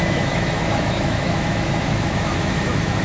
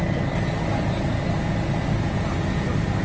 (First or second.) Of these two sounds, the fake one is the first